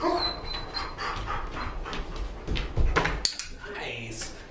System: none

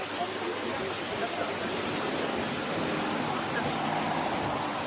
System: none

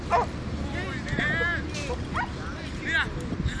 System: none